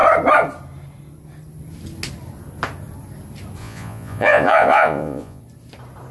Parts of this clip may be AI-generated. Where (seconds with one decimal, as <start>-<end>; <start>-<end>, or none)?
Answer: 3.6-5.4